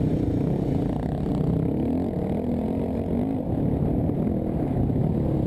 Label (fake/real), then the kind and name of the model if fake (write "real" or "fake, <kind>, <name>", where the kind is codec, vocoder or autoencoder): real